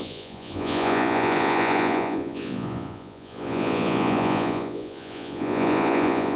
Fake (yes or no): yes